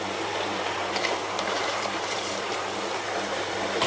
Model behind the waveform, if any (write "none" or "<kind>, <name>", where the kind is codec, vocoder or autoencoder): vocoder, BigVGAN v2